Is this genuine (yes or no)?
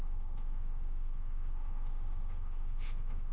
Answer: no